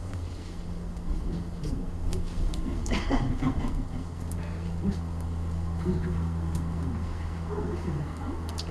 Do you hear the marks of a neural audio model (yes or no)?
yes